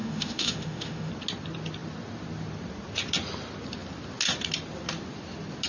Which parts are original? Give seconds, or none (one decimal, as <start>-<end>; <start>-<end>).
1.1-5.7

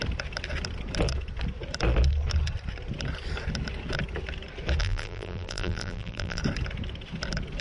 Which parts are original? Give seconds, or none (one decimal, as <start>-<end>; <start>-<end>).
0.0-4.8; 6.4-7.6